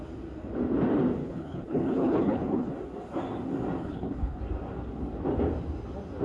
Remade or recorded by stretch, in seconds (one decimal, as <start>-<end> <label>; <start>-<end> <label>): 0.0-1.2 recorded; 1.2-2.7 remade; 2.7-3.8 recorded; 3.8-4.4 remade; 4.4-6.2 recorded